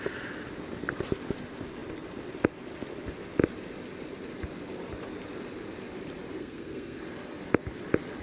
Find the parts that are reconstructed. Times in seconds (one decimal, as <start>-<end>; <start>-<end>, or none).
6.4-7.0